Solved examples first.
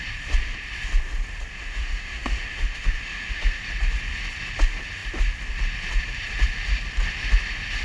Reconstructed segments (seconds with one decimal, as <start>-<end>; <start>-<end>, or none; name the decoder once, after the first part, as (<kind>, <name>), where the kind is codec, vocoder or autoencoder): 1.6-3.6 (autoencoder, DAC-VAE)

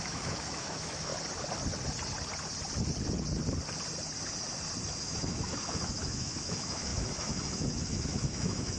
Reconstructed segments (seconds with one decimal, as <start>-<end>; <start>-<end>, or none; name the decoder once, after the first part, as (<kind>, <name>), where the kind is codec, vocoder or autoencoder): 0.0-1.1 (autoencoder, DAC-VAE); 5.0-8.8

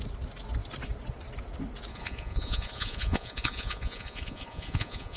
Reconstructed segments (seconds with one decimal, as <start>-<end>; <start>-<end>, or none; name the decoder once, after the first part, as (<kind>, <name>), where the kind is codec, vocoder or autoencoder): 1.9-5.2 (vocoder, Vocos)

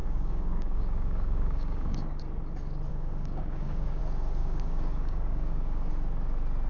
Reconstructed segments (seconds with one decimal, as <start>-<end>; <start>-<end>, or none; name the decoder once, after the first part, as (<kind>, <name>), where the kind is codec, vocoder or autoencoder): 0.0-2.2 (codec, DAC); 2.9-4.0; 4.4-5.9

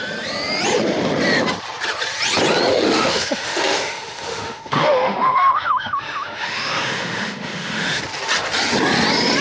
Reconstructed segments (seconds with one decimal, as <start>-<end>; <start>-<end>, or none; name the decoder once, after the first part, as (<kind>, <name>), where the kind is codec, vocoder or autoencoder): 2.7-8.0 (autoencoder, DAC-VAE)